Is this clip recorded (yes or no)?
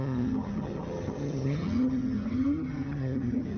no